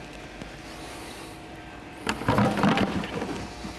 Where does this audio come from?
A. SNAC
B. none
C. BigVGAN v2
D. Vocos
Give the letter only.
C